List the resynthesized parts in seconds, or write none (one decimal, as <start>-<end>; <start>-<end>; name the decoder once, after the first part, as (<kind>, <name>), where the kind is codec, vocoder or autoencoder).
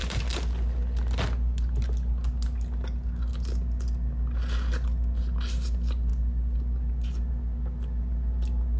none